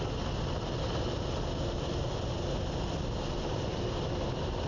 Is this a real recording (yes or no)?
yes